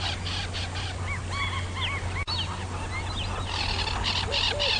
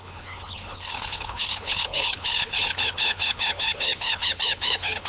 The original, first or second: first